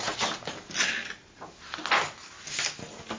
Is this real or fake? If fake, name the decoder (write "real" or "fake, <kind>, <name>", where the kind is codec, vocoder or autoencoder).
real